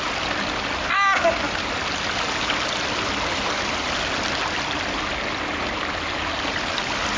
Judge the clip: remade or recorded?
recorded